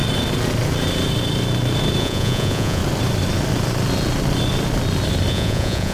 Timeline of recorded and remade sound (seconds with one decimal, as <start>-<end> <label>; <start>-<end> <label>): 0.0-2.0 recorded; 2.0-2.8 remade; 2.8-5.3 recorded; 5.3-5.9 remade